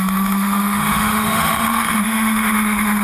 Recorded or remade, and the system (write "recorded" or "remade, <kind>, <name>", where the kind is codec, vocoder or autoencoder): remade, autoencoder, DAC-VAE